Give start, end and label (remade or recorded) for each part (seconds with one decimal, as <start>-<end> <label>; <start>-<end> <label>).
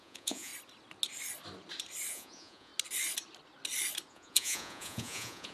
0.0-0.5 remade; 0.5-2.1 recorded; 2.1-2.7 remade; 2.7-4.1 recorded; 4.1-5.5 remade